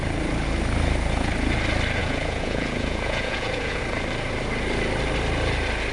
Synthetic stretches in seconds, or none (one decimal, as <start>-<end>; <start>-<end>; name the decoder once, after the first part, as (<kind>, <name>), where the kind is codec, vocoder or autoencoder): 2.0-3.8 (vocoder, Vocos)